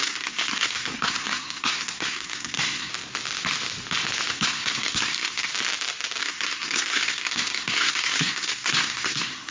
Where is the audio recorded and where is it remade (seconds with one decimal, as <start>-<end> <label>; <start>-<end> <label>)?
0.0-2.9 remade; 2.9-4.3 recorded; 4.3-5.5 remade; 5.5-6.2 recorded; 6.2-9.5 remade